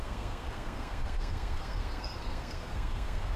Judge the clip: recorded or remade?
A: remade